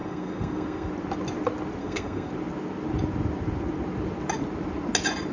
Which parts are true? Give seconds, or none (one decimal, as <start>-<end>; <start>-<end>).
0.9-1.8; 2.3-5.3